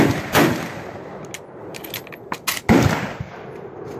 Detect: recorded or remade recorded